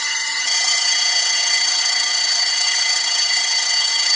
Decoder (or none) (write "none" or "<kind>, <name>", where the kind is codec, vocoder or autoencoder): vocoder, HiFi-GAN